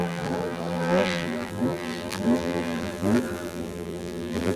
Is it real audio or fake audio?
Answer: fake